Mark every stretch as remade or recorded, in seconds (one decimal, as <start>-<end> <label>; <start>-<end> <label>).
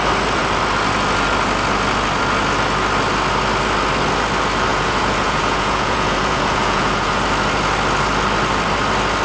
0.0-4.7 recorded; 4.7-7.2 remade; 7.2-9.2 recorded